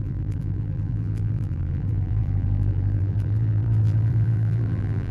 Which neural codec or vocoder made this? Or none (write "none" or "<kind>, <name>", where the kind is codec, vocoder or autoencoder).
vocoder, BigVGAN v2